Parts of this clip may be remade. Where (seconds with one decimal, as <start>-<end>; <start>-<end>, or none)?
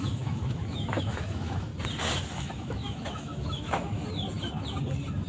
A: 0.0-1.7; 2.3-4.0